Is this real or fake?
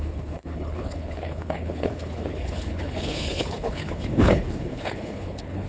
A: fake